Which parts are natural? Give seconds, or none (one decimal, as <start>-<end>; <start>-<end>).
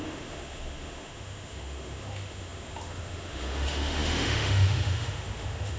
none